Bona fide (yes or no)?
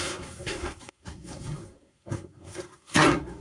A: no